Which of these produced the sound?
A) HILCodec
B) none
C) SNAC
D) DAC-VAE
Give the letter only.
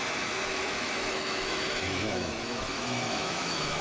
D